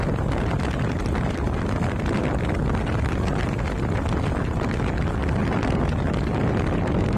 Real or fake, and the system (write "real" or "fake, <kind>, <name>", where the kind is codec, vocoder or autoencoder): real